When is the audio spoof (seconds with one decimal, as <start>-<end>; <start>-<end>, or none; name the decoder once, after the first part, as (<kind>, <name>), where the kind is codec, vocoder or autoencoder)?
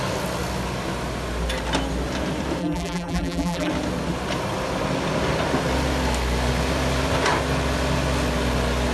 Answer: 2.6-3.7 (vocoder, BigVGAN v2)